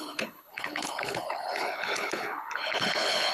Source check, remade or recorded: remade